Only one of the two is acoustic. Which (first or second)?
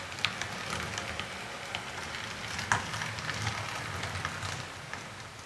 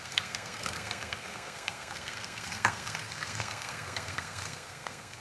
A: first